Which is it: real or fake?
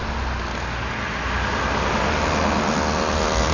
real